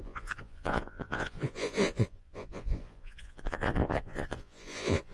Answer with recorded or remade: remade